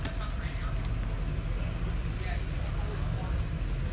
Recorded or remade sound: recorded